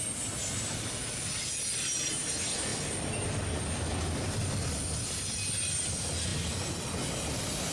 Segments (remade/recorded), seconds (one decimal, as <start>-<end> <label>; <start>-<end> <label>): 0.0-7.7 recorded